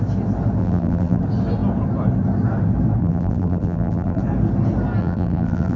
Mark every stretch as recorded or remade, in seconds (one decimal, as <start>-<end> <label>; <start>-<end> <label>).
0.0-0.6 recorded; 0.6-1.2 remade; 1.2-3.0 recorded; 3.0-4.2 remade; 4.2-5.0 recorded; 5.0-5.8 remade